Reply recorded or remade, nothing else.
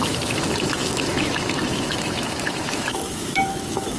remade